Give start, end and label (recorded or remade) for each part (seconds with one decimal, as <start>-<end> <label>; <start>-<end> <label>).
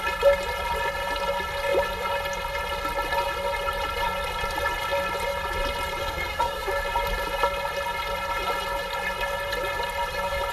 0.0-6.0 recorded; 6.0-6.7 remade; 6.7-10.5 recorded